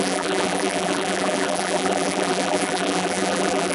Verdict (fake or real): fake